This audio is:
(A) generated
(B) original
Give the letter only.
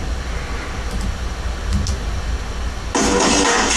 B